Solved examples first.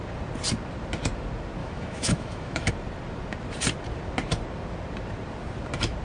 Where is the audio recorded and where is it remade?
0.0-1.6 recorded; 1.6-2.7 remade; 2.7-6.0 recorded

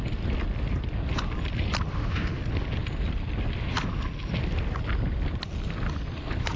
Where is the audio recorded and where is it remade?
0.0-1.9 recorded; 1.9-2.4 remade; 2.4-6.6 recorded

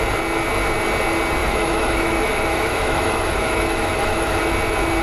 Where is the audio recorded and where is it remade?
0.0-1.4 recorded; 1.4-4.4 remade; 4.4-5.0 recorded

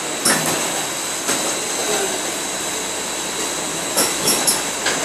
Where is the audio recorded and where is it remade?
0.0-3.7 recorded; 3.7-4.5 remade; 4.5-5.0 recorded

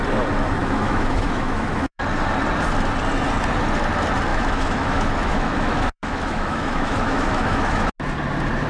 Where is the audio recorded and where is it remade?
0.0-0.6 recorded; 0.6-2.0 remade; 2.0-4.3 recorded; 4.3-7.9 remade; 7.9-8.7 recorded

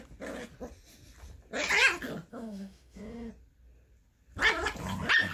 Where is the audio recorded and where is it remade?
0.0-2.3 recorded; 2.3-3.3 remade; 3.3-5.3 recorded

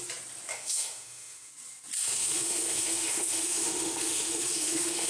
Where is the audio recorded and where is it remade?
0.0-0.5 recorded; 0.5-1.5 remade; 1.5-2.0 recorded; 2.0-5.1 remade